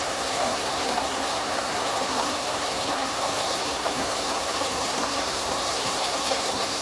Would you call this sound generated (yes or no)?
yes